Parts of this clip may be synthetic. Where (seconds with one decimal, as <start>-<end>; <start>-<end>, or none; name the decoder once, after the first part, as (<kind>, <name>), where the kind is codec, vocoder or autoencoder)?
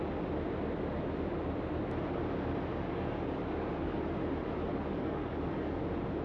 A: 2.7-4.0 (codec, DAC); 4.7-5.8